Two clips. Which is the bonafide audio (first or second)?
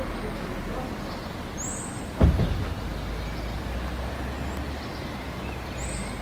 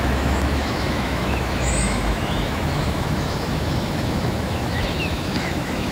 first